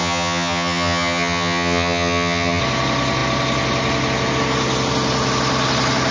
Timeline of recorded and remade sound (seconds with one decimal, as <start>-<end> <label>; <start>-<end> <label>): 0.0-2.6 remade; 2.6-6.1 recorded